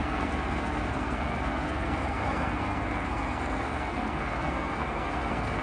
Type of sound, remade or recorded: remade